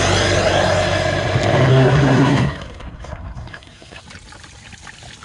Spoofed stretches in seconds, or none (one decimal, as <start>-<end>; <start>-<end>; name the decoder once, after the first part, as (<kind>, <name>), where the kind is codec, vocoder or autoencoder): 1.7-4.0 (codec, SNAC)

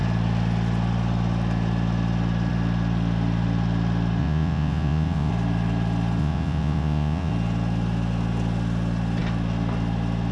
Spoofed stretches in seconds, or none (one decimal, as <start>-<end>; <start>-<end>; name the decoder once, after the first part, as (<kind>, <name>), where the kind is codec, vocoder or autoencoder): 4.2-5.3 (vocoder, Vocos); 6.2-7.3

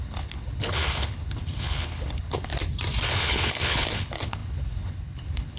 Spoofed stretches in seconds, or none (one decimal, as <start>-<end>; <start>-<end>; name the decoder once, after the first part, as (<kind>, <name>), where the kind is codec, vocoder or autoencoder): 0.0-2.5 (codec, HILCodec); 3.1-5.6

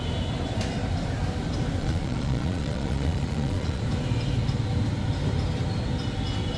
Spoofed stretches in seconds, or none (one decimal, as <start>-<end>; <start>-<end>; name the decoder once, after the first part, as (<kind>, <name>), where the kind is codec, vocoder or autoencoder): 1.8-3.8 (vocoder, Vocos)